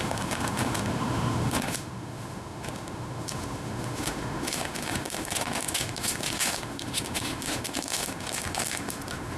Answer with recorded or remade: remade